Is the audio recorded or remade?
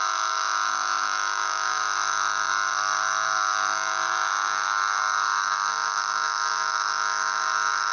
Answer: remade